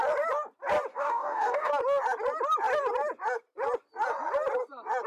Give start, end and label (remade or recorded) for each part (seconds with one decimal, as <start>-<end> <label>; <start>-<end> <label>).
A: 0.0-0.9 recorded; 0.9-1.7 remade; 1.7-5.1 recorded